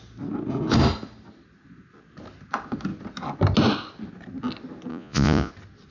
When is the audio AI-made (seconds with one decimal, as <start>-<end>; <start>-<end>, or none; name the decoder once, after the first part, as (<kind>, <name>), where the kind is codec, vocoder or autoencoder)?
4.9-5.5 (vocoder, Vocos)